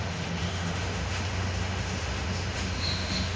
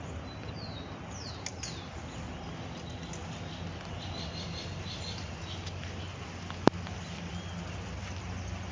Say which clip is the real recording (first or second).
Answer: second